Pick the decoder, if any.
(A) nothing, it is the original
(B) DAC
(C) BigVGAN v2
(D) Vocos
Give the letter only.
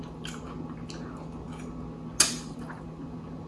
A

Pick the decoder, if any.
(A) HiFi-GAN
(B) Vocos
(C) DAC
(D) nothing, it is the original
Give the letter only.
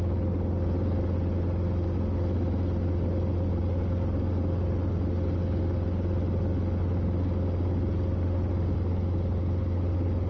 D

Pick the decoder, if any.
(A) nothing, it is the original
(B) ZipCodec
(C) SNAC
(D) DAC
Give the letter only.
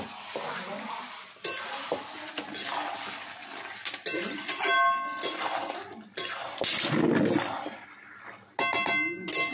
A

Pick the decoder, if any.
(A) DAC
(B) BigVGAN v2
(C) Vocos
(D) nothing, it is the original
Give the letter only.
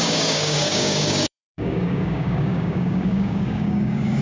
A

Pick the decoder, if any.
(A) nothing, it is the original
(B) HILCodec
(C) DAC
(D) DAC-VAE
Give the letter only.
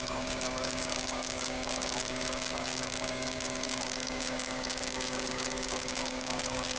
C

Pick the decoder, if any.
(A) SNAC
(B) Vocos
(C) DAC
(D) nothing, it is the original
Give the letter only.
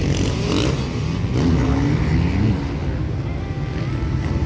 D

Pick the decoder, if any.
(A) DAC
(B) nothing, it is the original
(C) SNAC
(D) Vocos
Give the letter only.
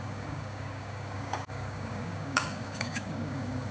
A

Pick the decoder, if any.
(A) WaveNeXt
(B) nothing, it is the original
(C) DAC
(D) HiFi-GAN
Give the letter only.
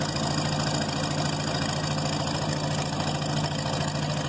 B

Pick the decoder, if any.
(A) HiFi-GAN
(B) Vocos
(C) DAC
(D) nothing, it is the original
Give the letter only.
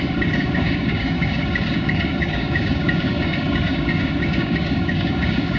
C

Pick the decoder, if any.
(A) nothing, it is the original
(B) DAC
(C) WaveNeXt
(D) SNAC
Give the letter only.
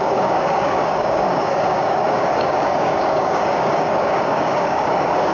B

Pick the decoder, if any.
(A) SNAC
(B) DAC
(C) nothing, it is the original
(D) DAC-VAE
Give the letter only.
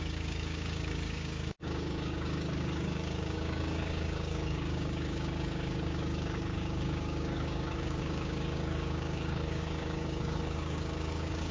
B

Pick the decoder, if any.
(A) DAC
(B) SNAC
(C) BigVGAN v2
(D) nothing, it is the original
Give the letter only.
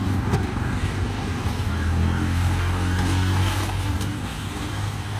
A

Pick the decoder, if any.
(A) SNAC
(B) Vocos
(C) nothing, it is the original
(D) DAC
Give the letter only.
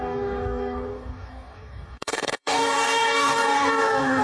D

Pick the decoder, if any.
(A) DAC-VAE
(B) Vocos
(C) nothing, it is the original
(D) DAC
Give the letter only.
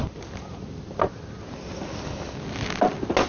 C